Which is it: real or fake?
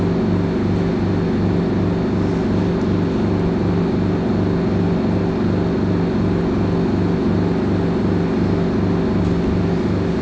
real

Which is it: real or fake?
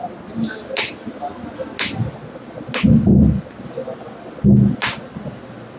real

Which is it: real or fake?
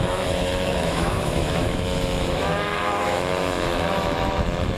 fake